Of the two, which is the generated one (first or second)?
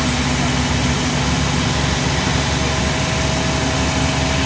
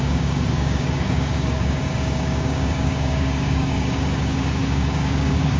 second